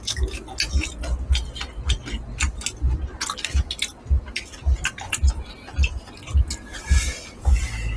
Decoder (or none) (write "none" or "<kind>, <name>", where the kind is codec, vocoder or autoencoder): none